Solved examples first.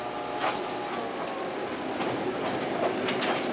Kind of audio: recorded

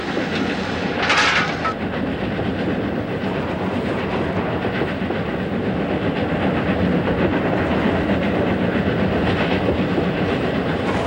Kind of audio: recorded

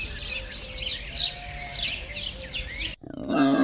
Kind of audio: recorded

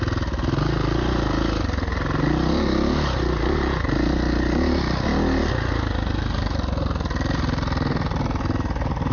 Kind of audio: recorded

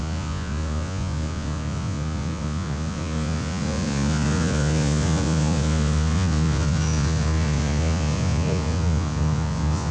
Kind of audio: remade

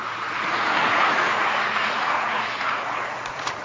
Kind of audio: remade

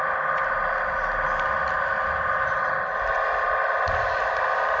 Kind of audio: recorded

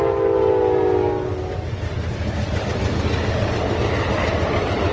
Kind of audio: recorded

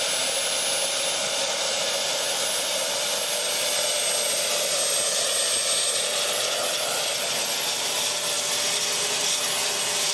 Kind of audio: recorded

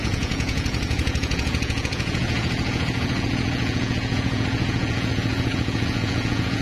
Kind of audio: remade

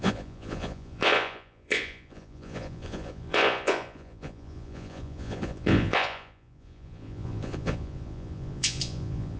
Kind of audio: remade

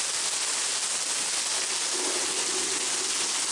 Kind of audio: recorded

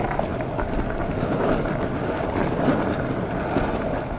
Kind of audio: recorded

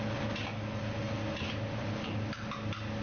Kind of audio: recorded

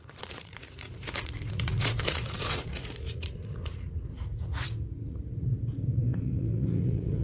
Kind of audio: remade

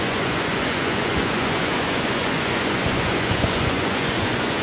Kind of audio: remade